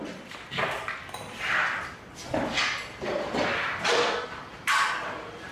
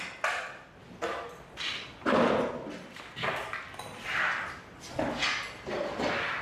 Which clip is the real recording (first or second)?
second